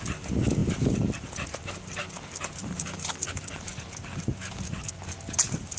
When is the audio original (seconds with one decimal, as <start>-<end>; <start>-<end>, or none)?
0.0-2.6; 3.3-5.8